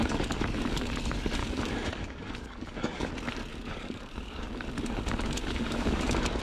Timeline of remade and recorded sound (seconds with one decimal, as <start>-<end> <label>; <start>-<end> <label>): 0.0-0.9 remade; 0.9-1.4 recorded; 1.4-3.1 remade; 3.1-3.5 recorded; 3.5-6.4 remade